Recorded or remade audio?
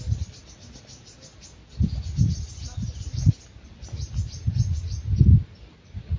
recorded